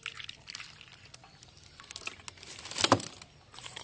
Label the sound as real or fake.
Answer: real